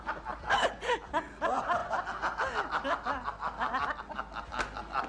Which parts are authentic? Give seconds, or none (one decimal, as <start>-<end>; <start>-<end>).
0.0-5.1